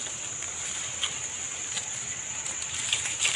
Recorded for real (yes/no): yes